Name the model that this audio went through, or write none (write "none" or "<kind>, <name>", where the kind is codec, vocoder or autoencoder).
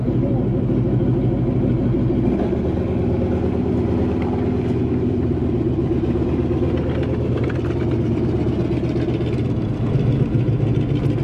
none